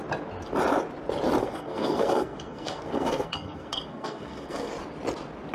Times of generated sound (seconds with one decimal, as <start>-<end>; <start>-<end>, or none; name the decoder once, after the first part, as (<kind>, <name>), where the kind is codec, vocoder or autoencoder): 1.4-4.7 (codec, SNAC)